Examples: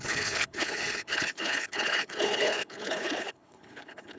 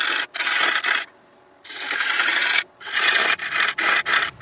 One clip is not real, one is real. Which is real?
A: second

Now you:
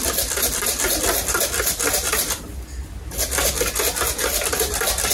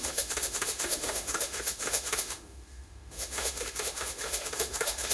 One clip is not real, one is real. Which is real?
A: first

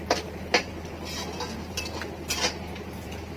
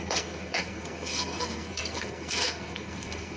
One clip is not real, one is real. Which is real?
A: first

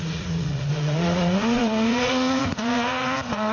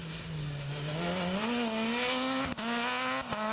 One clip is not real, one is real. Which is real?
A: second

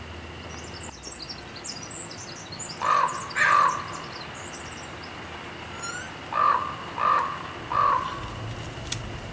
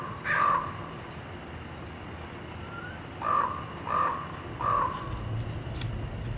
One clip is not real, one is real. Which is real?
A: first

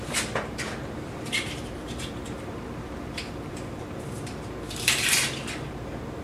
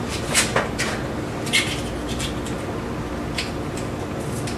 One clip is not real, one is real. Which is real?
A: second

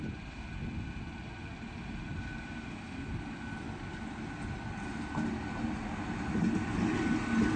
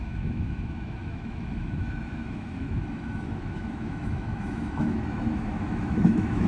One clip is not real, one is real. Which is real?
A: first